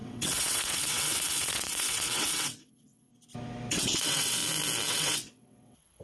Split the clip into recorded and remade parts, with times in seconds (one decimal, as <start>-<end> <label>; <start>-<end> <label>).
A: 0.0-3.1 remade; 3.1-3.7 recorded; 3.7-4.4 remade; 4.4-4.9 recorded; 4.9-6.0 remade